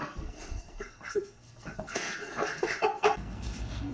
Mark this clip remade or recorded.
remade